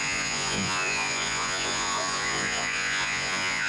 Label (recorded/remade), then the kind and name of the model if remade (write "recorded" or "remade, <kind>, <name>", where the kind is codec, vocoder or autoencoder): remade, vocoder, Vocos